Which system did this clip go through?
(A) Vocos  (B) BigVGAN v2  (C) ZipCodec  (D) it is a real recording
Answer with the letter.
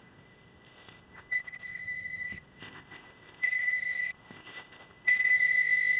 C